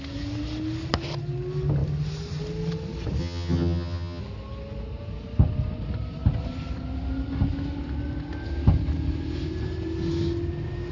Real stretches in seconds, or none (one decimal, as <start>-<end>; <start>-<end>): 0.0-3.2; 4.2-10.9